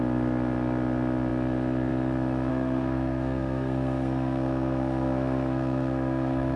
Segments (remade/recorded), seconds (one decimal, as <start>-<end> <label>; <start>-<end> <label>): 0.0-2.5 recorded; 2.5-6.6 remade